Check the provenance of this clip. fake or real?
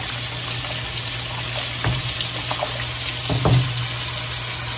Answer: real